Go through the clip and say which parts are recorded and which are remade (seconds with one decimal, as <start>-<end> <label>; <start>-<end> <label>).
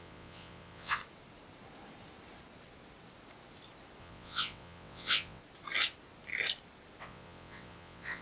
0.0-1.0 remade; 1.0-4.0 recorded; 4.0-5.4 remade; 5.4-7.0 recorded; 7.0-8.2 remade